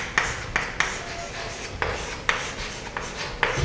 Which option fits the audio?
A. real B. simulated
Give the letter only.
A